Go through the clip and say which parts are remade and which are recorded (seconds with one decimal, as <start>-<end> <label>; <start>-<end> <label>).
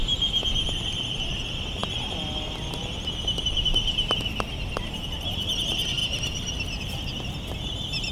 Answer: 0.0-8.1 recorded